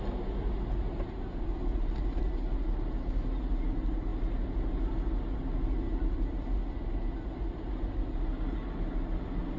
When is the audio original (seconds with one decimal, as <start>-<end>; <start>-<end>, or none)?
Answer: 0.0-9.6